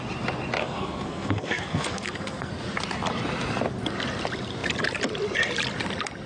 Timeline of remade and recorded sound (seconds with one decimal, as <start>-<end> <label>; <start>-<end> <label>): 0.0-0.6 recorded; 0.6-2.5 remade; 2.5-6.3 recorded